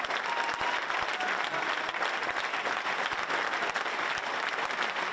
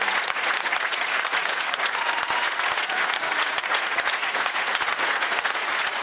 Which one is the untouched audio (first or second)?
first